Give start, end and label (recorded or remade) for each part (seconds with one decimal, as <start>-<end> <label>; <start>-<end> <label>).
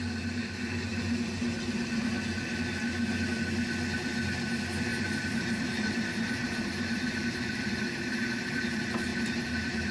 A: 0.0-4.9 recorded; 4.9-8.5 remade; 8.5-9.1 recorded; 9.1-9.9 remade